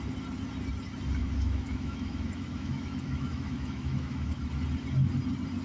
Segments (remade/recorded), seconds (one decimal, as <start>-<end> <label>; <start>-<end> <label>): 0.0-1.2 recorded; 1.2-4.4 remade; 4.4-5.6 recorded